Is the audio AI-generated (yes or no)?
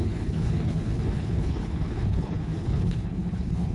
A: yes